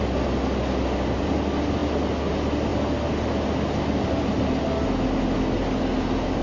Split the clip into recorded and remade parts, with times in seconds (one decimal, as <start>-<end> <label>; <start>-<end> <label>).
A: 0.0-6.4 recorded